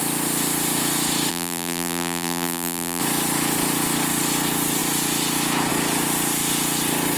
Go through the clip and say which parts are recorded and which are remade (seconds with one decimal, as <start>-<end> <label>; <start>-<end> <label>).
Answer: 0.0-1.3 recorded; 1.3-3.0 remade; 3.0-7.2 recorded